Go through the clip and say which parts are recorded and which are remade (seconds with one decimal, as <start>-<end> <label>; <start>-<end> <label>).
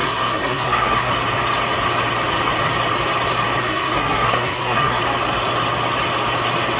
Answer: 0.0-1.1 remade; 1.1-3.6 recorded; 3.6-5.0 remade; 5.0-6.8 recorded